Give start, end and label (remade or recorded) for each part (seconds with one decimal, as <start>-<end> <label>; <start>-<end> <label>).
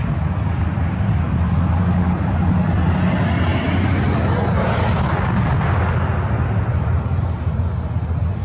0.0-8.4 recorded